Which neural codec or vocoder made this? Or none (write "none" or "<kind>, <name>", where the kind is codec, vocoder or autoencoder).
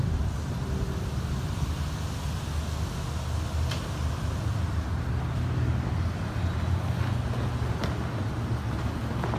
none